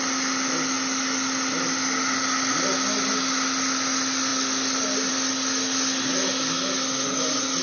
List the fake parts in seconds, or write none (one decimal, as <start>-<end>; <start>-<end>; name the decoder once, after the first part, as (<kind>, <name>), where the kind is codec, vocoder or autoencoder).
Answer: none